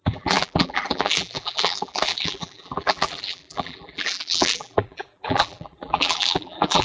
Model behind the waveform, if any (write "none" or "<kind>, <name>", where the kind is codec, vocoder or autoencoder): vocoder, BigVGAN v2